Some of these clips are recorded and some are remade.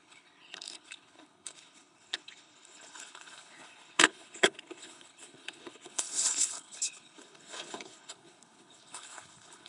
remade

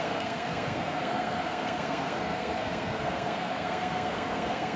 remade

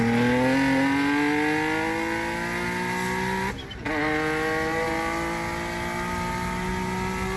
recorded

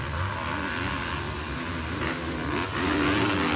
recorded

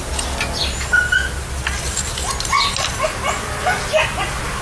recorded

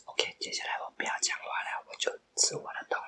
recorded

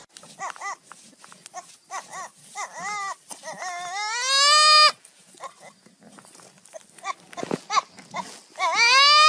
recorded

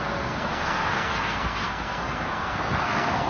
remade